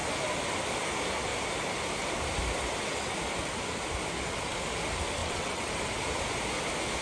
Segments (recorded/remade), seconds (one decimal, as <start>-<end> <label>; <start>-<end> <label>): 0.0-5.2 recorded; 5.2-5.7 remade; 5.7-7.0 recorded